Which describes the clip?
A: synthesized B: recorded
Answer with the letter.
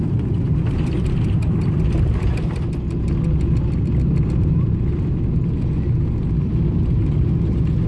B